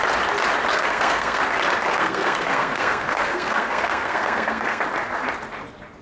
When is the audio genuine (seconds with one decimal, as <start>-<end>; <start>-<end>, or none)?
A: 0.0-0.7; 1.4-1.9; 4.8-6.0